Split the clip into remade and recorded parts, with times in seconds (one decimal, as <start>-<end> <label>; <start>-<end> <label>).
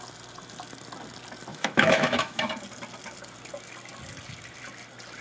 0.0-1.5 recorded; 1.5-2.5 remade; 2.5-5.2 recorded